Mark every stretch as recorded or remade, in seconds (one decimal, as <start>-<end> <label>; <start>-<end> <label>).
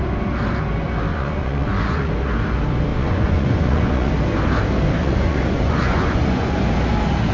0.0-1.1 recorded; 1.1-2.1 remade; 2.1-2.9 recorded; 2.9-4.1 remade; 4.1-5.0 recorded; 5.0-6.6 remade; 6.6-7.3 recorded